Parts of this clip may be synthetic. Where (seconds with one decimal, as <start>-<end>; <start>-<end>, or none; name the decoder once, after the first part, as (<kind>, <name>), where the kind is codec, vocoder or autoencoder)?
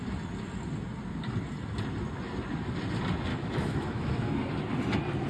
3.3-4.4 (autoencoder, DAC-VAE)